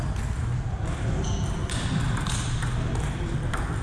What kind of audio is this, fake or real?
real